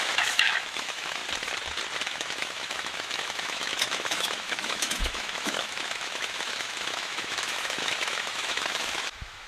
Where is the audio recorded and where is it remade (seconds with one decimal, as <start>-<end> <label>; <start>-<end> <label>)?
0.0-1.2 remade; 1.2-2.0 recorded; 2.0-9.5 remade